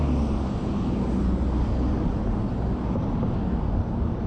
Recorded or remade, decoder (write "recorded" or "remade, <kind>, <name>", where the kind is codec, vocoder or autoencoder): recorded